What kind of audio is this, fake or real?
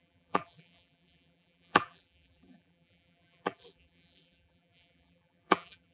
fake